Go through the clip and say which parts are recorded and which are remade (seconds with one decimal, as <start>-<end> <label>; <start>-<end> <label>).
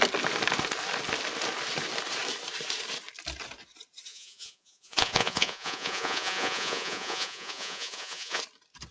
0.0-4.1 recorded; 4.1-8.4 remade; 8.4-8.9 recorded